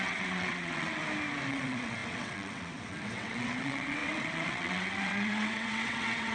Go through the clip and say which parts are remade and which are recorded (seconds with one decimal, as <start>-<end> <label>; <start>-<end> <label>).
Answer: 0.0-1.0 remade; 1.0-1.5 recorded; 1.5-6.3 remade